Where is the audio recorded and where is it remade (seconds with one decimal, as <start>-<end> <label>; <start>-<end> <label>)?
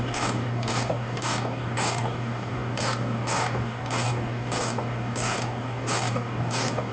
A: 0.0-6.9 remade